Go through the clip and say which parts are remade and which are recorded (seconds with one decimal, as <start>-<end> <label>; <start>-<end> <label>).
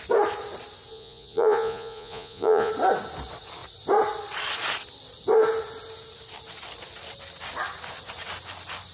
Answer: 0.0-0.9 recorded; 0.9-2.7 remade; 2.7-8.9 recorded